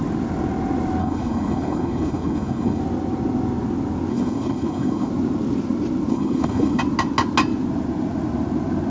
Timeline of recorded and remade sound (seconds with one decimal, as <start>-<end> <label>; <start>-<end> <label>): 0.0-1.0 recorded; 1.0-2.8 remade; 2.8-4.1 recorded; 4.1-5.1 remade; 5.1-6.1 recorded; 6.1-6.8 remade; 6.8-8.9 recorded